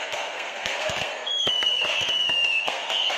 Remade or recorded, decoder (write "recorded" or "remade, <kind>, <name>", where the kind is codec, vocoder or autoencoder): remade, codec, SNAC